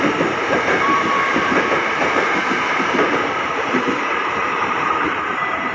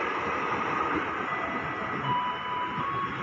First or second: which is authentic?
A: second